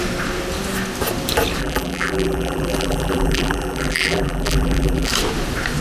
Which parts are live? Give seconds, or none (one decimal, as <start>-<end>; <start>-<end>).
0.0-1.6; 5.1-5.8